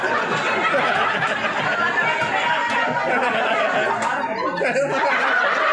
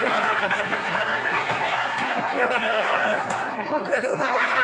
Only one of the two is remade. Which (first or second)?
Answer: second